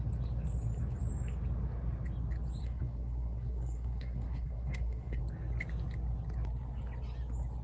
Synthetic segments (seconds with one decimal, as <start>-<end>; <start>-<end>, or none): 2.6-5.2